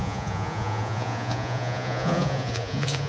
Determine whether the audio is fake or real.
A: fake